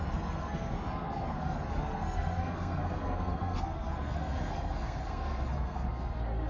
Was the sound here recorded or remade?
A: remade